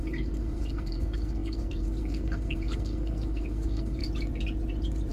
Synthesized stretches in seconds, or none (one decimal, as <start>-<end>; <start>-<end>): 0.0-4.0